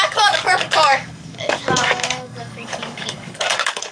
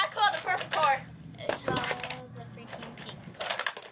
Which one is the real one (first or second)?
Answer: second